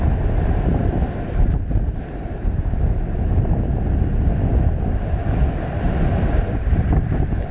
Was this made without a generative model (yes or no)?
yes